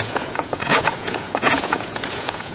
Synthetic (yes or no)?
yes